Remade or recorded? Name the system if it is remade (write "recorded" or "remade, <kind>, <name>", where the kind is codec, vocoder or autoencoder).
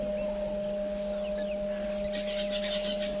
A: recorded